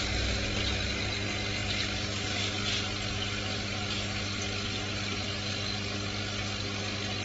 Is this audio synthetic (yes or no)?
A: no